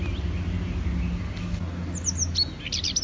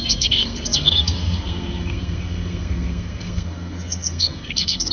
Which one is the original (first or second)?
first